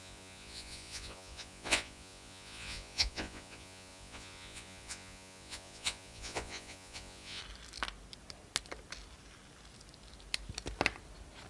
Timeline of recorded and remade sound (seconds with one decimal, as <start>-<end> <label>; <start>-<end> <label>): 0.0-7.4 remade; 7.4-11.5 recorded